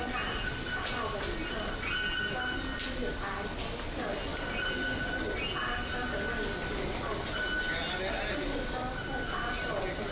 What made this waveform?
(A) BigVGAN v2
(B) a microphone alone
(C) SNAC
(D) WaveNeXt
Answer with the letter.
B